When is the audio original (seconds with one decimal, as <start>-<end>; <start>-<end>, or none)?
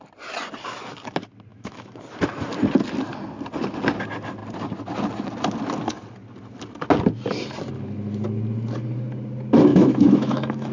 0.0-1.5; 2.0-9.7